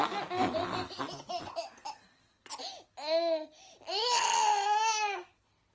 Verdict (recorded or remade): recorded